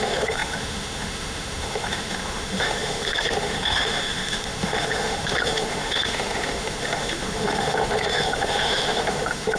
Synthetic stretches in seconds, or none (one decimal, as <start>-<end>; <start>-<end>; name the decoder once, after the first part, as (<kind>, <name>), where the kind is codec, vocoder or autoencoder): 0.0-9.6 (autoencoder, DAC-VAE)